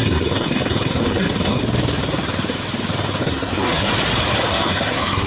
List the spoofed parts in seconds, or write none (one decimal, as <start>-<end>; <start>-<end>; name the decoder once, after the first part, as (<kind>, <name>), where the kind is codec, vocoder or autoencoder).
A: 0.0-1.6 (codec, SNAC); 3.2-3.9; 4.5-5.3